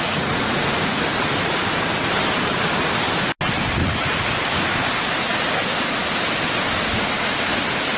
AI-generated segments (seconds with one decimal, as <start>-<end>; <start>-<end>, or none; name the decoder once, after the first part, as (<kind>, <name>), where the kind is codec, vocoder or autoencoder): 0.0-1.0 (vocoder, Vocos); 3.8-4.6